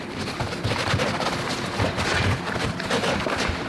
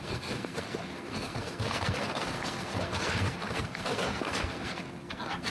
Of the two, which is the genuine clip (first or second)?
first